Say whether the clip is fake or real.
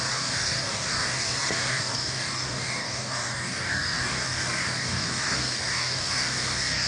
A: fake